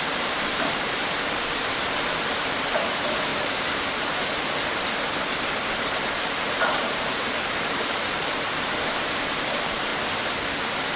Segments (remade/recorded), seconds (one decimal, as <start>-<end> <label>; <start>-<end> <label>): 0.0-3.3 remade; 3.3-5.2 recorded; 5.2-9.9 remade; 9.9-10.9 recorded